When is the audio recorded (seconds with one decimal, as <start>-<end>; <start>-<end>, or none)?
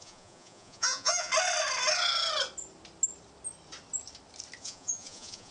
1.3-4.6